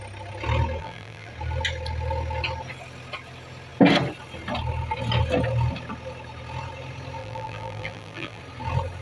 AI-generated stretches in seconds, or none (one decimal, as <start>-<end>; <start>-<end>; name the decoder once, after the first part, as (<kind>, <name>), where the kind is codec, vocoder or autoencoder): 0.8-1.3 (vocoder, BigVGAN v2); 7.2-8.4